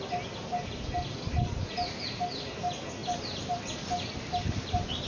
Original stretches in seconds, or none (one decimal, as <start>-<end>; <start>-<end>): 0.0-3.0